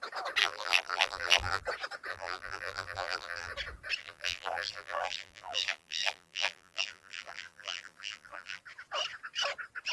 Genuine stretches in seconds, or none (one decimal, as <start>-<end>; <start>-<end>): 0.0-0.4; 1.6-2.1; 3.5-4.0; 8.6-9.9